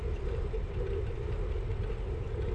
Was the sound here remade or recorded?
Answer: recorded